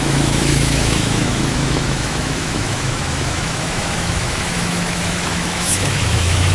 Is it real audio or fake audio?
fake